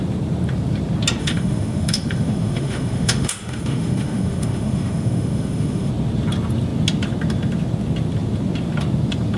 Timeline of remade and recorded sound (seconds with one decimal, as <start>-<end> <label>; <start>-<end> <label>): 0.0-1.2 recorded; 1.2-5.9 remade; 5.9-9.4 recorded